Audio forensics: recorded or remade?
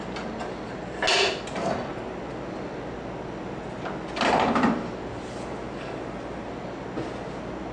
recorded